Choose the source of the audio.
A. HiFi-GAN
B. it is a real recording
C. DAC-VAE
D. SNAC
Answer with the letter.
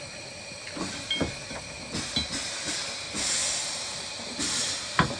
B